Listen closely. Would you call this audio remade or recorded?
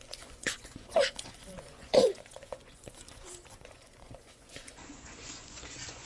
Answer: remade